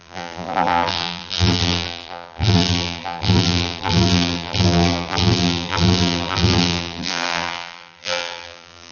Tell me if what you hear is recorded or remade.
remade